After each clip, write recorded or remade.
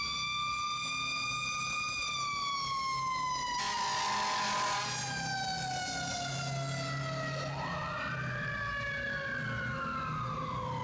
recorded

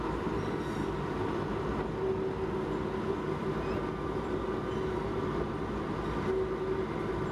recorded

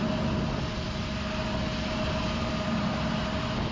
recorded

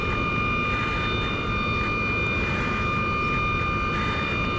recorded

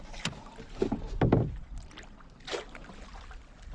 recorded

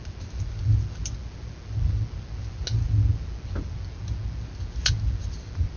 recorded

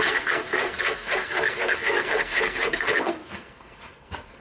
remade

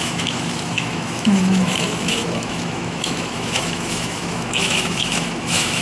remade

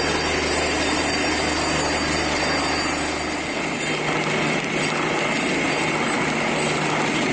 recorded